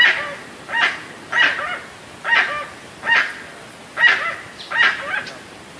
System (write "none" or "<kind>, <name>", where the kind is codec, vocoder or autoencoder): none